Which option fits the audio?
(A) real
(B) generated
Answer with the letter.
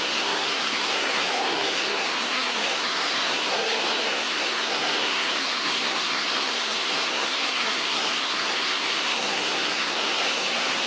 B